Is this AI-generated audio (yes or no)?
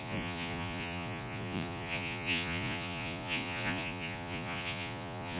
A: yes